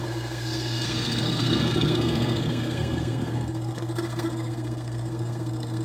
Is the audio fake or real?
fake